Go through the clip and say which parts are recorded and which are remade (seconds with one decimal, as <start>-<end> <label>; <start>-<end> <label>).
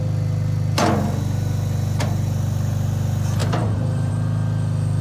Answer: 0.0-3.4 recorded; 3.4-4.1 remade; 4.1-5.0 recorded